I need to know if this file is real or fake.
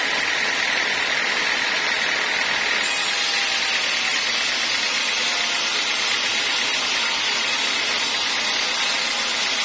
real